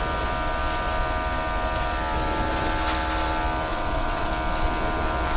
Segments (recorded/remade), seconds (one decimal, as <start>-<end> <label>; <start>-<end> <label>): 0.0-3.7 recorded; 3.7-4.3 remade; 4.3-5.4 recorded